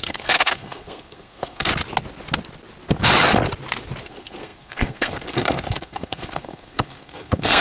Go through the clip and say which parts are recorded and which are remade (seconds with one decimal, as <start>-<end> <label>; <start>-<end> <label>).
0.0-1.7 remade; 1.7-4.0 recorded; 4.0-7.6 remade